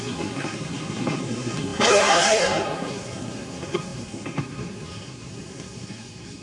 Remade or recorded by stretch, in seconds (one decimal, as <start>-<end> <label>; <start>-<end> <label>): 0.0-6.4 remade